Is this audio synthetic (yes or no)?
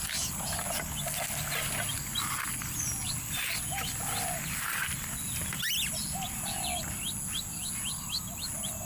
no